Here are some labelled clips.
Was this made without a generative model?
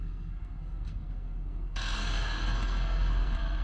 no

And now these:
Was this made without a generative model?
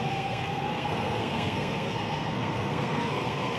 no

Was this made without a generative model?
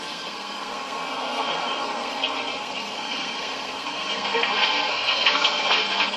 no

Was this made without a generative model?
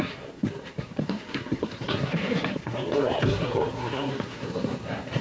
no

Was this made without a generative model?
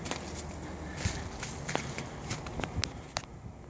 yes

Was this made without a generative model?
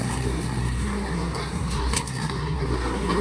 no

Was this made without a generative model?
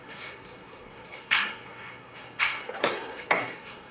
no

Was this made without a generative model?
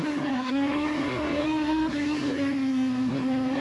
no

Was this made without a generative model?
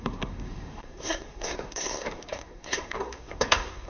no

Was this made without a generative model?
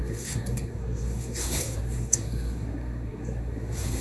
no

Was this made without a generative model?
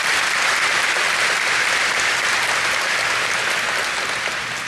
yes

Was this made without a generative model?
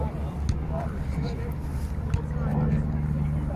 yes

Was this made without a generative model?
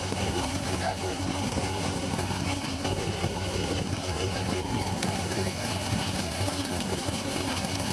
no